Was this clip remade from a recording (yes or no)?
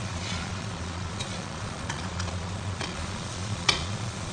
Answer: yes